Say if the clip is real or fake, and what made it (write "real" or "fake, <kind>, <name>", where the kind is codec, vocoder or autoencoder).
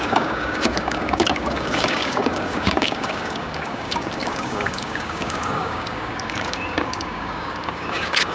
fake, codec, DAC